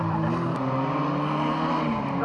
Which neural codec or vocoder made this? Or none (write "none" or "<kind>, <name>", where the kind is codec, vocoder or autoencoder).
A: none